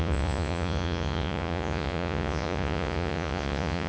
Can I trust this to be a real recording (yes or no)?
no